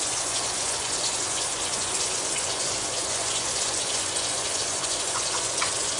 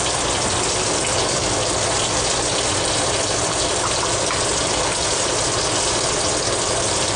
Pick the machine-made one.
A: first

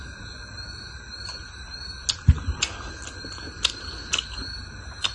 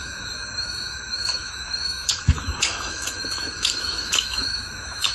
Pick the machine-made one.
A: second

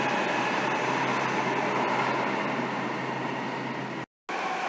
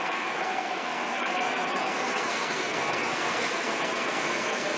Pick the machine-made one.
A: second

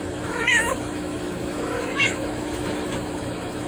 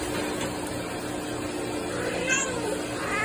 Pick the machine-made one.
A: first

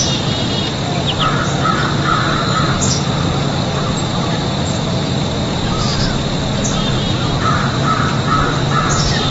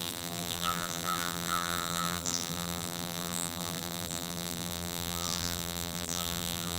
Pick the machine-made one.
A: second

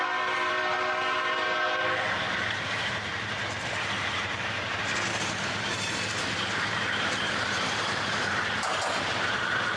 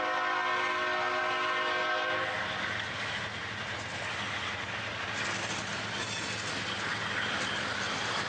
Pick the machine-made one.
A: first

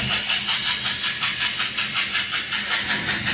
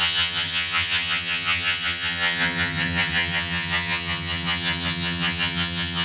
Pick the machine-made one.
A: second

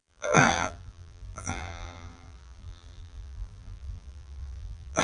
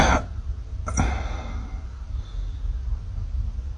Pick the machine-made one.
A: first